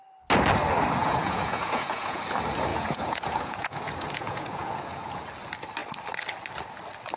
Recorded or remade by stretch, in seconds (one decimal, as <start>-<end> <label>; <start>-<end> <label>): 0.0-1.0 recorded; 1.0-2.2 remade; 2.2-2.7 recorded; 2.7-5.2 remade; 5.2-7.2 recorded